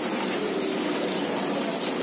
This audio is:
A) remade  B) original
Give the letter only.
B